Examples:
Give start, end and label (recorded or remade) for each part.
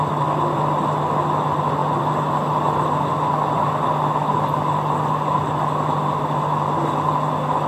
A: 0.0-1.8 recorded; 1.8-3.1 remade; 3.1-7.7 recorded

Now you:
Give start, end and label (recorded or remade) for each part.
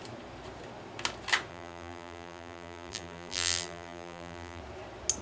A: 0.0-1.5 recorded; 1.5-4.6 remade; 4.6-5.2 recorded